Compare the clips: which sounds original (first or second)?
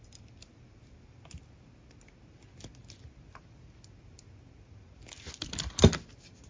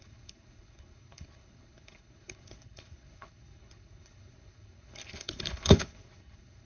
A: first